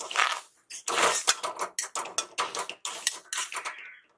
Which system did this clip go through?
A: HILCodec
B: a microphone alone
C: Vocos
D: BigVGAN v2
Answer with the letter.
B